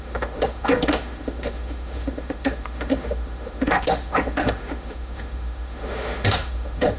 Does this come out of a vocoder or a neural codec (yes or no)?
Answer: yes